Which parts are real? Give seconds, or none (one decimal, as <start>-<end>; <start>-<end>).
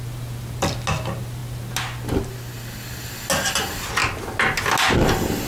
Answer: 0.0-5.5